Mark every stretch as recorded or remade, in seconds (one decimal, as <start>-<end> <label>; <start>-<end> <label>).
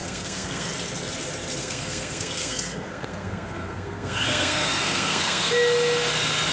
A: 0.0-0.7 remade; 0.7-1.6 recorded; 1.6-5.5 remade; 5.5-6.5 recorded